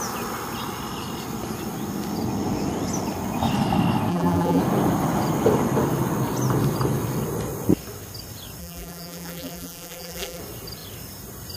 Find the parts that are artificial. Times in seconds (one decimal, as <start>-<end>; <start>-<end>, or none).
4.1-4.6; 8.6-10.4